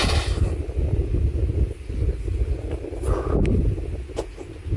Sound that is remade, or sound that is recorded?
recorded